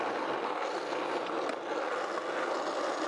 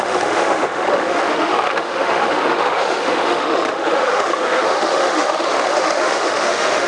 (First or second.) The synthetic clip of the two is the second